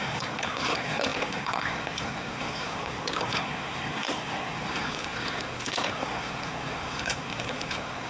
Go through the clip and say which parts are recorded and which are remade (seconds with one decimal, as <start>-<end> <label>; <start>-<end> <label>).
0.0-8.1 remade